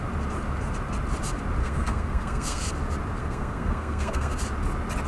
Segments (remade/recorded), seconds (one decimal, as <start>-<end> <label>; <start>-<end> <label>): 0.0-1.6 recorded; 1.6-2.7 remade; 2.7-3.2 recorded; 3.2-4.4 remade; 4.4-5.1 recorded